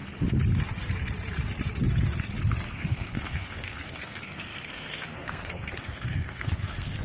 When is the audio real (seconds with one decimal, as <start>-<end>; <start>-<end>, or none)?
0.0-2.7